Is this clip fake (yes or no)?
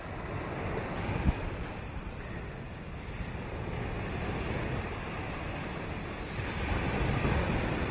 no